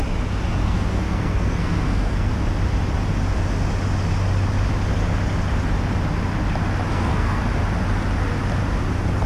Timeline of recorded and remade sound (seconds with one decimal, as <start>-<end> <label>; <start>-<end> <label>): 0.0-0.6 recorded; 0.6-2.3 remade; 2.3-6.9 recorded; 6.9-7.4 remade; 7.4-9.3 recorded